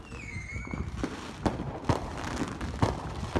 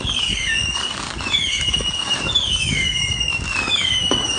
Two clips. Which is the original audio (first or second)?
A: first